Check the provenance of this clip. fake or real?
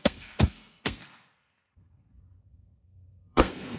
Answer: fake